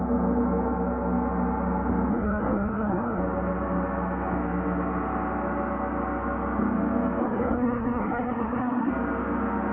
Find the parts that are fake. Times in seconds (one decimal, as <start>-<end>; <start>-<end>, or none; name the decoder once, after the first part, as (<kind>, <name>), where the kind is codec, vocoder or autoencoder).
2.1-3.2 (codec, SNAC); 7.2-8.9